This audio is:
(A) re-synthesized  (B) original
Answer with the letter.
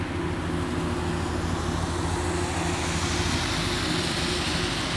B